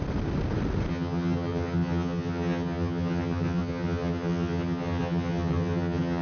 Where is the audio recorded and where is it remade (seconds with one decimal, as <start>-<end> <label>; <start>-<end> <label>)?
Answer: 0.0-0.9 recorded; 0.9-6.2 remade